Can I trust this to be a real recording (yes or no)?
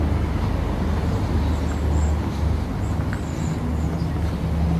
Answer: yes